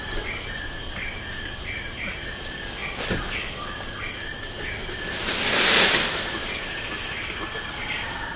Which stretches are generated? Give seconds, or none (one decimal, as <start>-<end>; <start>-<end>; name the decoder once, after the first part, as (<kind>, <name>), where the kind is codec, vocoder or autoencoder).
none

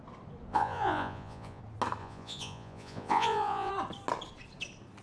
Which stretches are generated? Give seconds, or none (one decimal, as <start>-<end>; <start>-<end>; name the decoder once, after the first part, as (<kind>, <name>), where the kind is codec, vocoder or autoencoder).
0.5-1.6 (vocoder, Vocos); 2.0-3.7